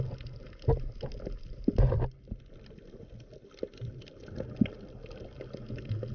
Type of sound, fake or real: real